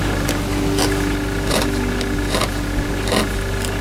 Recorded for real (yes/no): yes